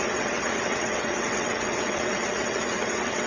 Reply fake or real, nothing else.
fake